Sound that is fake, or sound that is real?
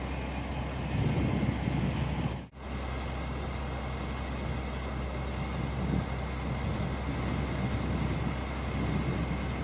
real